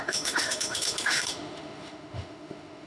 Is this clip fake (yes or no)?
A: yes